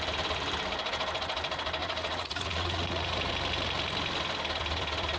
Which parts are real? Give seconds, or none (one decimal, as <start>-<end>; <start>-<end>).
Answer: 0.0-1.8; 3.3-5.2